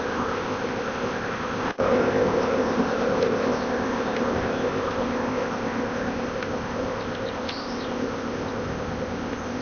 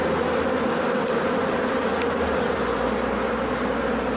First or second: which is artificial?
first